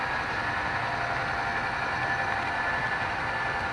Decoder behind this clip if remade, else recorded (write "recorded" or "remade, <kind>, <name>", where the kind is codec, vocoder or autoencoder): recorded